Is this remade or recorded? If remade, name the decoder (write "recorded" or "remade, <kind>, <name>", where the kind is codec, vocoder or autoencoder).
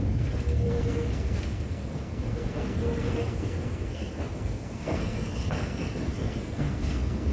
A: remade, codec, SNAC